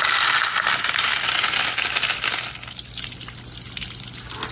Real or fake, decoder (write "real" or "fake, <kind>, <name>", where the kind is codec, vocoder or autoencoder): real